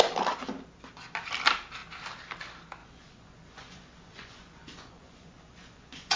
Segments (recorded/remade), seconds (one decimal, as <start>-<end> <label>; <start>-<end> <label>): 0.0-2.8 recorded; 2.8-6.2 remade